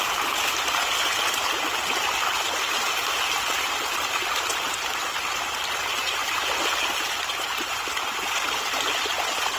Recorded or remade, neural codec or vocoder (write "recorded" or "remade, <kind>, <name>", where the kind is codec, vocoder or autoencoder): recorded